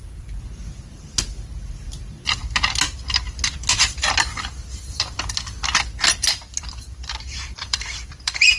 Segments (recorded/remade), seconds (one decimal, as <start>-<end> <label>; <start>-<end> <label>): 0.0-2.4 remade; 2.4-6.6 recorded; 6.6-8.6 remade